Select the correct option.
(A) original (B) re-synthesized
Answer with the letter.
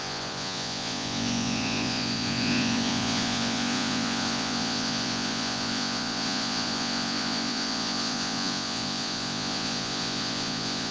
B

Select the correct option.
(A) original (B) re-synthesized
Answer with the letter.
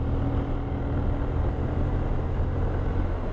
A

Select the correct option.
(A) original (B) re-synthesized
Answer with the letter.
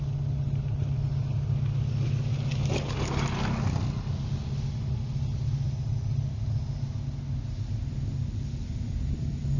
A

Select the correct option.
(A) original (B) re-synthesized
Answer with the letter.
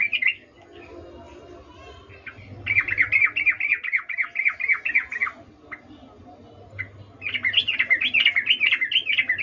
A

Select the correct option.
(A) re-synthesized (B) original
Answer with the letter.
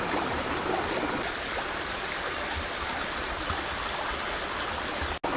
B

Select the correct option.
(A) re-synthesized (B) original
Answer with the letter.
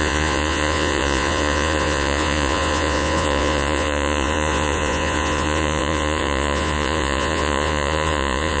A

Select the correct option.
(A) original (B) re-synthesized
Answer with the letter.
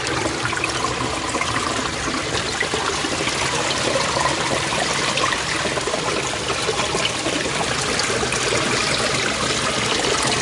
A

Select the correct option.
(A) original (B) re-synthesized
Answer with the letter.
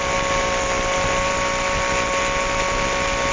A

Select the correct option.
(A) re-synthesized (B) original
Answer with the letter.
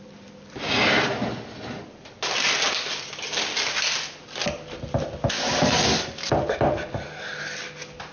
B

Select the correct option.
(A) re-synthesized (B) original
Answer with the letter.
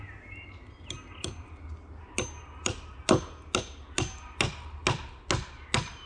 B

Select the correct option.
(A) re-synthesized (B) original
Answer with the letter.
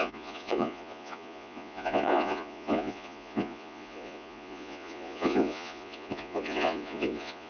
A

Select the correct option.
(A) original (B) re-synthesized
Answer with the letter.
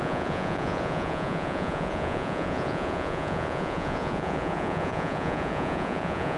B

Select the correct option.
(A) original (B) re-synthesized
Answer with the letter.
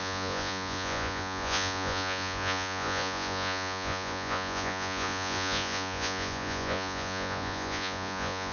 B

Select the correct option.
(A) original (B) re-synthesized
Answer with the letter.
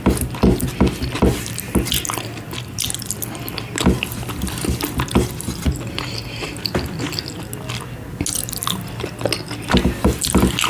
A